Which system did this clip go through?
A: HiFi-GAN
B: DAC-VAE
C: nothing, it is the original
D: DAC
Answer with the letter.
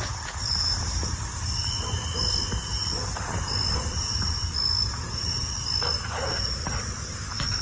C